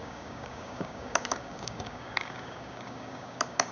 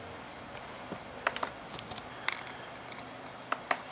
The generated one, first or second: first